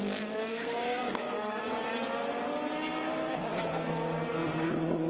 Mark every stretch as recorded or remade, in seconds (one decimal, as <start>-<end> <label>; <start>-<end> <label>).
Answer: 0.0-0.5 recorded; 0.5-1.6 remade; 1.6-5.1 recorded